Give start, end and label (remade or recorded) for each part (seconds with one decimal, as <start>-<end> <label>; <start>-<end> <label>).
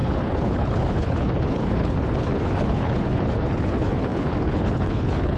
0.0-5.4 remade